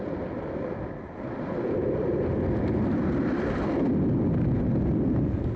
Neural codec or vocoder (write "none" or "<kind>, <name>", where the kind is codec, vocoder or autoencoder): none